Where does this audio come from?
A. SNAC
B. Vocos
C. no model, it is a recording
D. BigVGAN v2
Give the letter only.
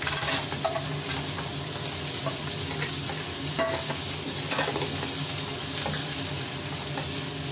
C